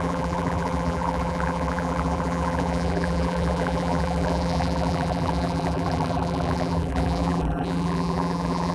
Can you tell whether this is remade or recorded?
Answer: remade